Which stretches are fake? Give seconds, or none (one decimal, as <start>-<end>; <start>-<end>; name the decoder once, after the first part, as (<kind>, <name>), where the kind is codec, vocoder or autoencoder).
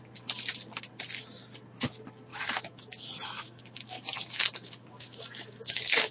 2.3-6.1 (autoencoder, DAC-VAE)